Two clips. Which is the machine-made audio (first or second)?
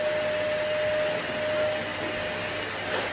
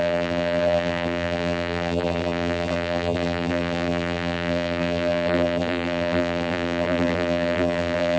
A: second